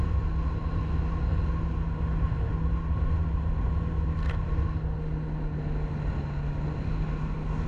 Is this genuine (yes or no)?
yes